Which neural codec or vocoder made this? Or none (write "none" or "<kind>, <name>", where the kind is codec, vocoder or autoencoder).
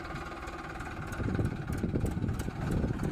none